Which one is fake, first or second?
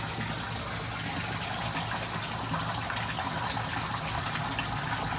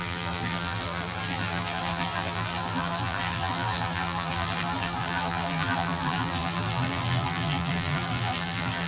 second